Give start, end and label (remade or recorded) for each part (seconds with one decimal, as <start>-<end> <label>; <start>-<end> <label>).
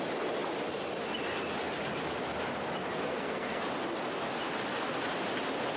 0.0-3.1 recorded; 3.1-3.6 remade; 3.6-5.8 recorded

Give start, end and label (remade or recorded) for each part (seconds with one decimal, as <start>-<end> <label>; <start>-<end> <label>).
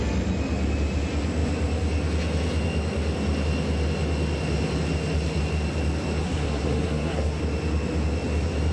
0.0-6.2 recorded; 6.2-7.4 remade; 7.4-8.7 recorded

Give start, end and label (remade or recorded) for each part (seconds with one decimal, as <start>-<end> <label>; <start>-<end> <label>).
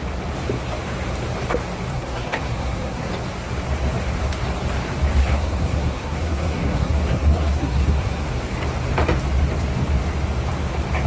0.0-1.9 recorded; 1.9-3.1 remade; 3.1-5.2 recorded; 5.2-8.3 remade; 8.3-11.1 recorded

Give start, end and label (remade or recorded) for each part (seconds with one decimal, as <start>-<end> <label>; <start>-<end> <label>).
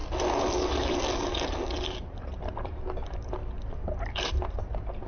0.0-5.1 recorded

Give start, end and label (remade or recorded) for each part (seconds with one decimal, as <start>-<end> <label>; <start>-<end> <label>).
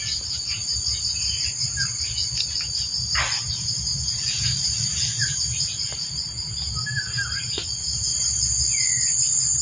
0.0-9.6 recorded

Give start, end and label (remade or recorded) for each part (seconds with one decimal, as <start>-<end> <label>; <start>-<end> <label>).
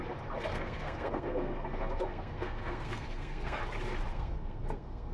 0.0-0.5 recorded; 0.5-3.6 remade; 3.6-4.1 recorded; 4.1-5.1 remade